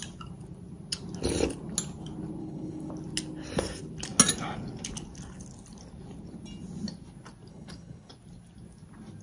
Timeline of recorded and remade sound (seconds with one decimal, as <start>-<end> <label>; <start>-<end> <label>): 0.0-2.4 recorded; 2.4-2.9 remade; 2.9-7.5 recorded; 7.5-8.1 remade; 8.1-9.2 recorded